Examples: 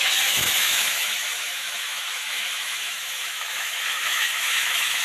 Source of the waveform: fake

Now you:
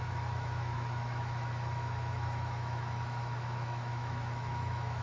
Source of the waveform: fake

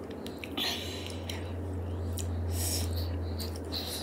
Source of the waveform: real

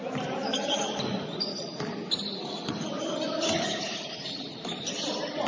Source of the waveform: real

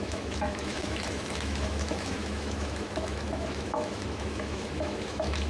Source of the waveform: fake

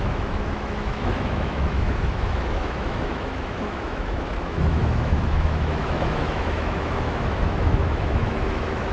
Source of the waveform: fake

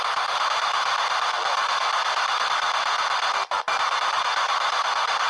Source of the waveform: real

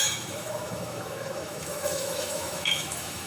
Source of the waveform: fake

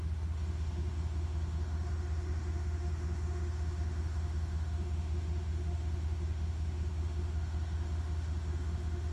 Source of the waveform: fake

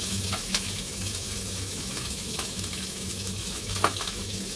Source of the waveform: fake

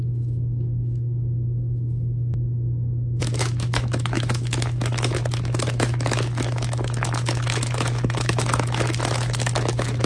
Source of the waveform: fake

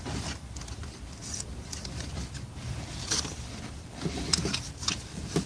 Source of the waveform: real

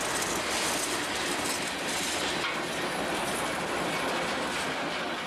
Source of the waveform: real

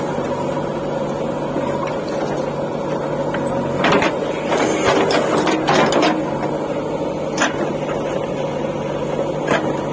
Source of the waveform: real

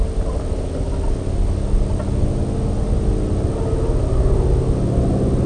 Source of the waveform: real